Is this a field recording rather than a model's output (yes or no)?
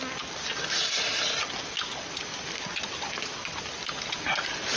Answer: yes